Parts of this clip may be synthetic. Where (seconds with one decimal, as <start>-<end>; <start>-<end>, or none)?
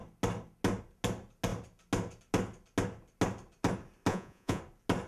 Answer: 4.1-4.6